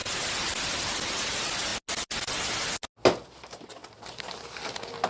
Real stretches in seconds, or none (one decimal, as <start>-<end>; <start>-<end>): 0.9-5.1